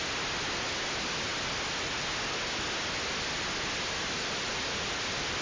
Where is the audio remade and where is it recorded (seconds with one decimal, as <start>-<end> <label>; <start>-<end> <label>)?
0.0-5.4 recorded